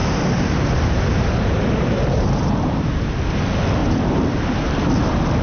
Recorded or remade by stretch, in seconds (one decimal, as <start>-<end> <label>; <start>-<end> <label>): 0.0-3.2 remade; 3.2-3.8 recorded; 3.8-4.9 remade; 4.9-5.4 recorded